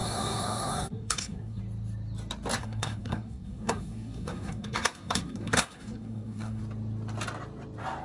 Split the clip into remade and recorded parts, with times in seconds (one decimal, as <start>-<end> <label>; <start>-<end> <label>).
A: 0.0-1.6 remade; 1.6-2.6 recorded; 2.6-6.6 remade; 6.6-8.0 recorded